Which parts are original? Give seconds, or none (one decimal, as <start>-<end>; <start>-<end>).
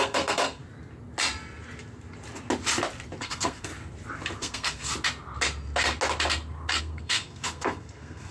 0.6-3.2; 3.7-4.4; 4.9-6.8